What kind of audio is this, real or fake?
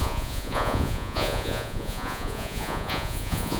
fake